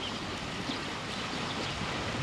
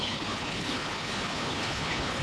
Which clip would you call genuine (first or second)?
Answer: first